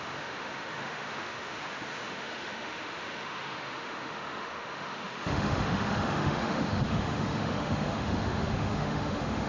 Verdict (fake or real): fake